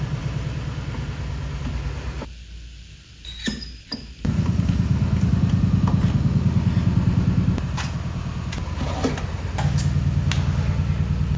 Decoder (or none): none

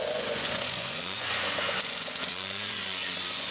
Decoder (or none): vocoder, Vocos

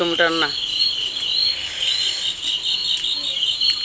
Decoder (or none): none